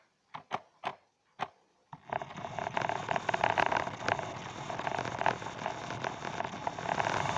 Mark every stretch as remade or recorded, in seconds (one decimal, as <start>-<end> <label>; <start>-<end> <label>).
0.0-7.4 recorded